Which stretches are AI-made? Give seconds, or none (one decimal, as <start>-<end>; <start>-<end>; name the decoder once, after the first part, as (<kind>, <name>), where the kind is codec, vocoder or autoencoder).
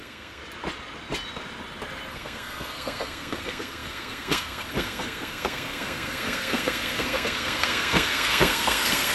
0.0-0.4 (codec, SNAC); 2.1-9.1